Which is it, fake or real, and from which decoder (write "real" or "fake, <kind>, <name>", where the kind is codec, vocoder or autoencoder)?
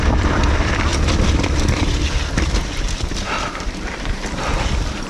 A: fake, vocoder, BigVGAN v2